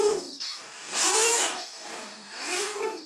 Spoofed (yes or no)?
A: yes